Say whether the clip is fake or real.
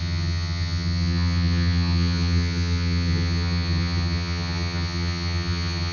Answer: fake